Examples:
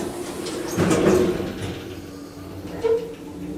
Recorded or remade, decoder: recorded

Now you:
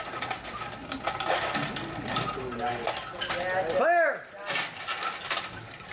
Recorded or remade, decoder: recorded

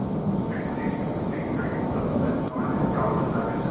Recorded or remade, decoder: remade, autoencoder, DAC-VAE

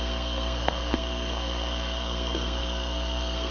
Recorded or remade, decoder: remade, codec, SNAC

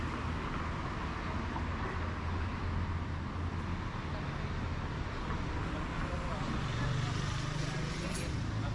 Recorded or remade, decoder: recorded